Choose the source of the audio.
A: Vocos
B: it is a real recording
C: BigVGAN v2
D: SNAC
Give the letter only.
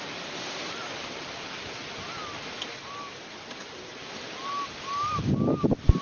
B